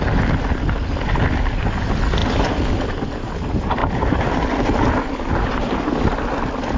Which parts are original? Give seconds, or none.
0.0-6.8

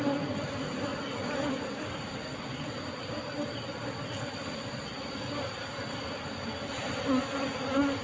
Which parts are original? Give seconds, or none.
0.0-0.9; 2.7-3.1; 7.1-8.0

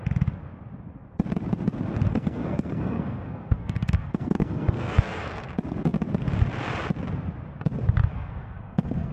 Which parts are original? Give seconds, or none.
0.0-2.1; 5.5-8.1

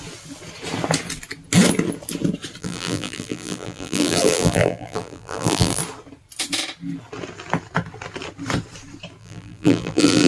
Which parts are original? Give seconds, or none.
0.0-2.6; 5.8-9.2

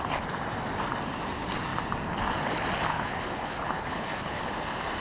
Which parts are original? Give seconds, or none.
0.0-2.9; 4.4-5.0